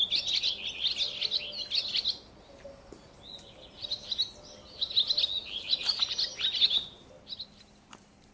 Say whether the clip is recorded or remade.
recorded